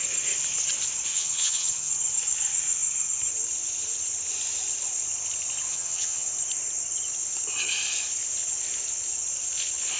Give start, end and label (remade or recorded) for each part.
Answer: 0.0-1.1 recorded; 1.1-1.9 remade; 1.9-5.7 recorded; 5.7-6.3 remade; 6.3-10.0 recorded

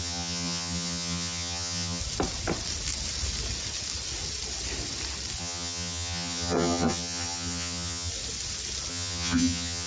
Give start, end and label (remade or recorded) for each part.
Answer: 0.0-2.0 remade; 2.0-5.4 recorded; 5.4-8.1 remade; 8.1-8.9 recorded; 8.9-9.9 remade

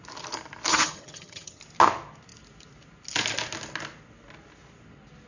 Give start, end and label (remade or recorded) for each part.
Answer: 0.0-0.7 recorded; 0.7-1.6 remade; 1.6-5.3 recorded

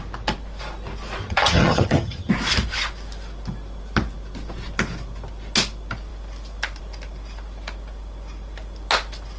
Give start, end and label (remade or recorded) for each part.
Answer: 0.0-1.2 recorded; 1.2-2.3 remade; 2.3-9.4 recorded

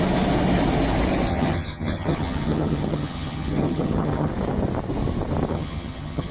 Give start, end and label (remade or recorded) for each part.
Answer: 0.0-1.3 recorded; 1.3-4.3 remade; 4.3-5.5 recorded; 5.5-6.3 remade

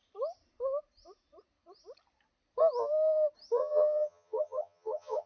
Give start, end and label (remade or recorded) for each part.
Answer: 0.0-3.6 recorded; 3.6-5.3 remade

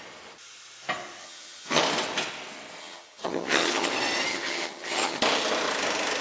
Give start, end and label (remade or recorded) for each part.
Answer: 0.0-1.2 recorded; 1.2-1.8 remade; 1.8-2.8 recorded; 2.8-3.9 remade; 3.9-4.3 recorded; 4.3-5.2 remade; 5.2-6.2 recorded